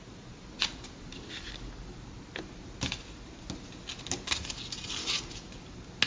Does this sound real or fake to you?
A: real